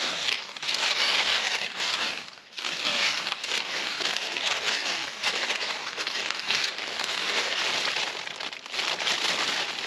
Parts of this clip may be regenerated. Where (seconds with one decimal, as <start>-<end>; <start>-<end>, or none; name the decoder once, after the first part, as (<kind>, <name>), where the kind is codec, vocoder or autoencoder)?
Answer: 0.0-7.6 (codec, DAC)